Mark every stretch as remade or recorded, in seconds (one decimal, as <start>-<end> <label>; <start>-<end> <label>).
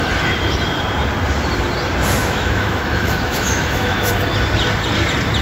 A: 0.0-2.2 recorded; 2.2-4.1 remade; 4.1-5.4 recorded